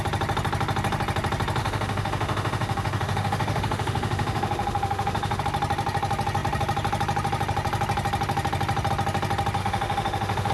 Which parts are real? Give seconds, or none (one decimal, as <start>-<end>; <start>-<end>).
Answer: 0.0-1.6; 5.4-9.6